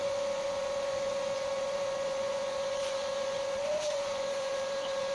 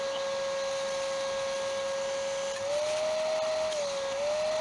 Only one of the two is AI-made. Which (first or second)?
first